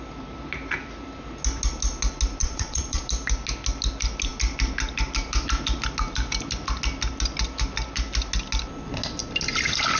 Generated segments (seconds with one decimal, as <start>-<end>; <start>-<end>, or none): 2.4-3.0